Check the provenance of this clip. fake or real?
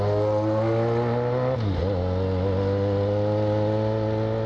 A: real